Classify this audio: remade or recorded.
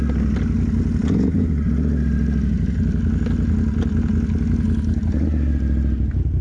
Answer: recorded